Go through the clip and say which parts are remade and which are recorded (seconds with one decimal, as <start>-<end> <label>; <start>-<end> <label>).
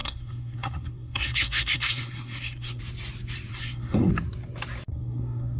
0.0-2.8 remade; 2.8-3.5 recorded; 3.5-4.1 remade; 4.1-4.9 recorded; 4.9-5.6 remade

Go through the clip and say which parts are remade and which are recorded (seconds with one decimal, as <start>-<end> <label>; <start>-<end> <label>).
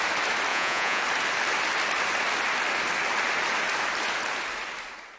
0.0-0.5 recorded; 0.5-1.0 remade; 1.0-5.2 recorded